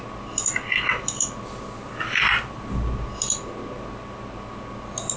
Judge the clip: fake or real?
real